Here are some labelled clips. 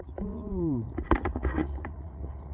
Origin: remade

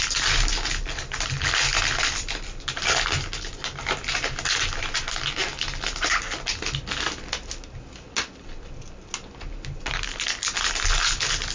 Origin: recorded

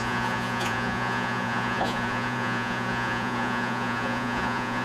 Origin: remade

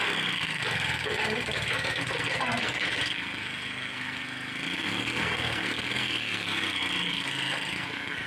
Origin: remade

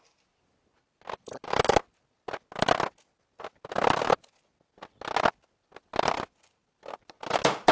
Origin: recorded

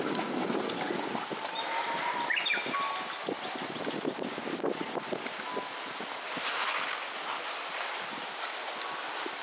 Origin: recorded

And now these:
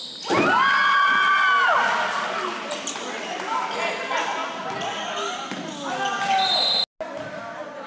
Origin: recorded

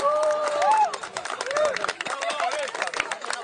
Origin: remade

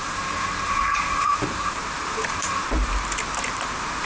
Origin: remade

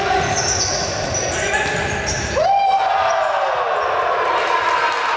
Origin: recorded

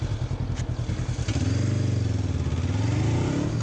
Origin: recorded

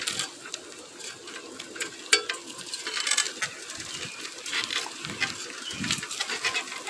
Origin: recorded